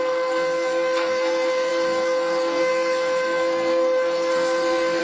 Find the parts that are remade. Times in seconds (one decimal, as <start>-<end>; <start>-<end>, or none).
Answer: 0.0-5.0